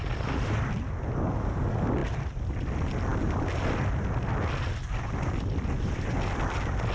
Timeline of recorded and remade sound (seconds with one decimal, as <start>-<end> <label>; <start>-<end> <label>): 0.0-6.9 recorded